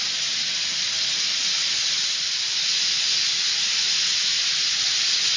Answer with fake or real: real